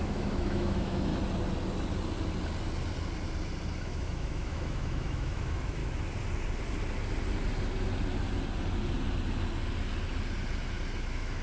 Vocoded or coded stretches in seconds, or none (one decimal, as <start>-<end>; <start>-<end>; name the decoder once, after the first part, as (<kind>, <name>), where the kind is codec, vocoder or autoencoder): 0.0-1.1 (autoencoder, DAC-VAE); 3.8-5.8; 11.0-11.4

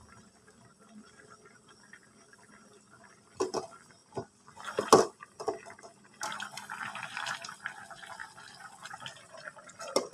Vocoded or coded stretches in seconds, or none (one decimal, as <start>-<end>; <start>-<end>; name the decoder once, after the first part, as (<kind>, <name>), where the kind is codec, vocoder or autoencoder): none

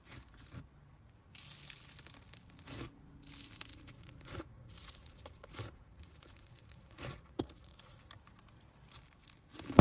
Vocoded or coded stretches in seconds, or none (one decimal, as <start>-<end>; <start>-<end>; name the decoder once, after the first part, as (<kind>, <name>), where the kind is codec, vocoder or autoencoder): 3.7-8.0 (vocoder, Vocos)

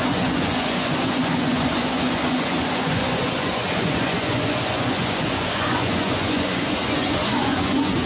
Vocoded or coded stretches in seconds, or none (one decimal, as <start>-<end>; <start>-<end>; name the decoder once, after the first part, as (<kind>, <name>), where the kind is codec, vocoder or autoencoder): 0.0-8.1 (vocoder, Vocos)

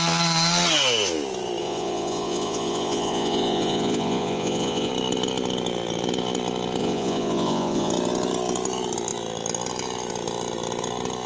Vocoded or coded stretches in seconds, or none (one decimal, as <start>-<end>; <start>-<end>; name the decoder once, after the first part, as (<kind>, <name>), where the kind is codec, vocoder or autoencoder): 1.6-4.9 (vocoder, Vocos); 6.8-7.9